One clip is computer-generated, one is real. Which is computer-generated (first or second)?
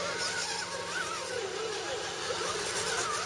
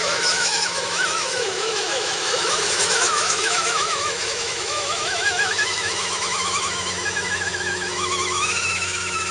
second